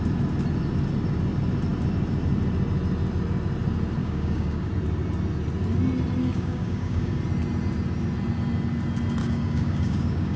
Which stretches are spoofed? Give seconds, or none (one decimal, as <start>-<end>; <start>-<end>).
4.0-4.7; 6.2-7.2; 9.2-10.4